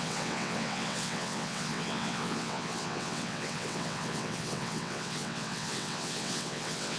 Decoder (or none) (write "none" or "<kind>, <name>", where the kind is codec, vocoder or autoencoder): vocoder, WaveNeXt